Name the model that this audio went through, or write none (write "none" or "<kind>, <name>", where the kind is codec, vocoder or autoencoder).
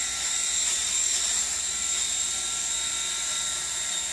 none